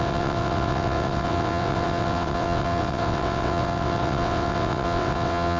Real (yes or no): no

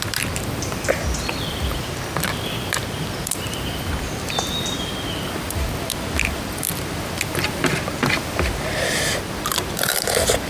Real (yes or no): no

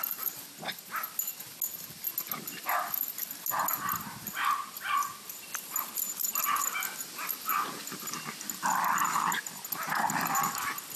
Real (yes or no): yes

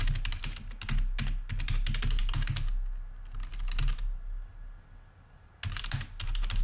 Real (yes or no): yes